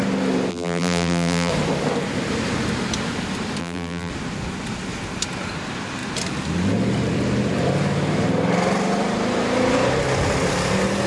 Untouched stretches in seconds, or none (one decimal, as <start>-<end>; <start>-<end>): 0.0-0.5; 1.5-3.6; 4.1-11.1